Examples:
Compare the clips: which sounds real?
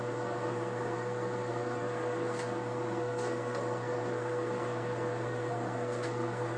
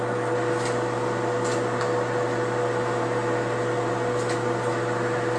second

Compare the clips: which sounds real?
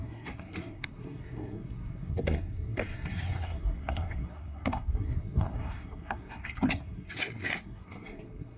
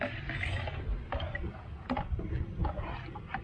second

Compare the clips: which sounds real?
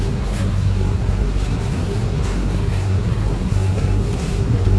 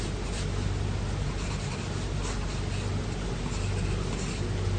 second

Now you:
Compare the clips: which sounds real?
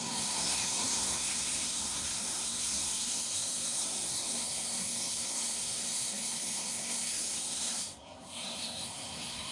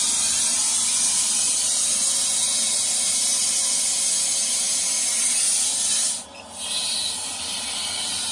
second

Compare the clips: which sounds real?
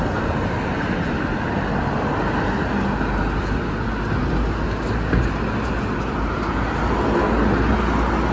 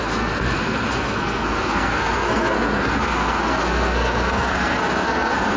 first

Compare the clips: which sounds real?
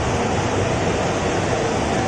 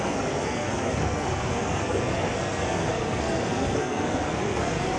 first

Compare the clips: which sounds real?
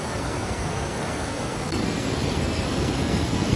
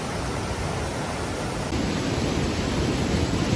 second